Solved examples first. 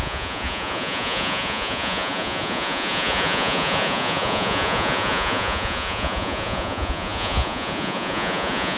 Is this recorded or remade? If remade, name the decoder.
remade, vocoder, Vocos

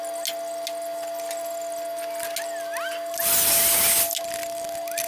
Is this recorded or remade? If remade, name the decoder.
recorded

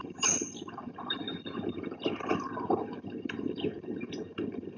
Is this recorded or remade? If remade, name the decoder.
remade, vocoder, BigVGAN v2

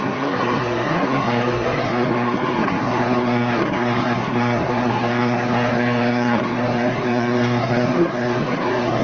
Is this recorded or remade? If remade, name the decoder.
remade, codec, SNAC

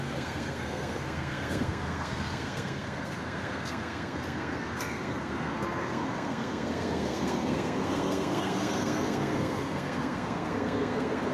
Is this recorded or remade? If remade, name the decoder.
remade, codec, SNAC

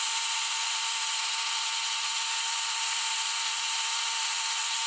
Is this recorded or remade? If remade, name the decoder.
remade, vocoder, Vocos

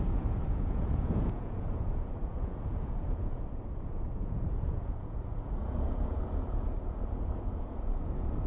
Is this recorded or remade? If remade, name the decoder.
remade, vocoder, Vocos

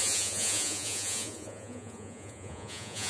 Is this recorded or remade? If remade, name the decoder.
remade, vocoder, Vocos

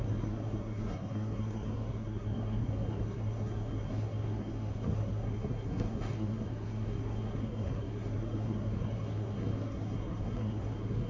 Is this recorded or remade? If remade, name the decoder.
remade, codec, SNAC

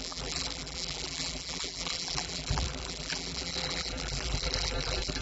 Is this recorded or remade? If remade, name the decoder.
remade, vocoder, BigVGAN v2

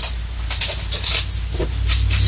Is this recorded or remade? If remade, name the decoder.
recorded